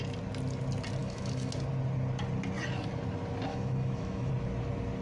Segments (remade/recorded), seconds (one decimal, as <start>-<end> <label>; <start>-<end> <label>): 0.0-1.0 recorded; 1.0-1.5 remade; 1.5-3.5 recorded; 3.5-4.3 remade; 4.3-5.0 recorded